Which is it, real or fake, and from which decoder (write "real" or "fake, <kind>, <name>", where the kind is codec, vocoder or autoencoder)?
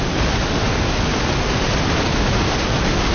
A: real